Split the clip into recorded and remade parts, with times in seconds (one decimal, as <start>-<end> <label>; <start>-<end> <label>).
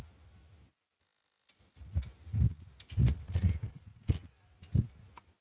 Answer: 0.0-5.4 recorded